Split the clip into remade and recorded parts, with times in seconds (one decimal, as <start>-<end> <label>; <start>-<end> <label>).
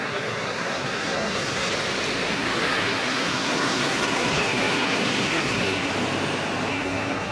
0.0-1.7 remade; 1.7-2.3 recorded; 2.3-5.9 remade; 5.9-6.7 recorded; 6.7-7.3 remade